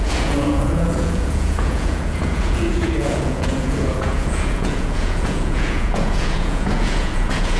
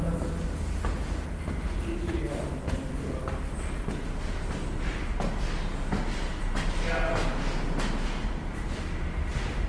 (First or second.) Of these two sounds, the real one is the second